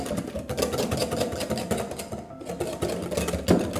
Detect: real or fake real